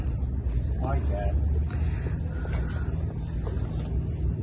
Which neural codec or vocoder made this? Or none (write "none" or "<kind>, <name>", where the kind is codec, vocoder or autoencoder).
none